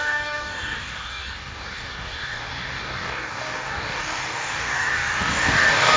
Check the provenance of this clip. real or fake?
fake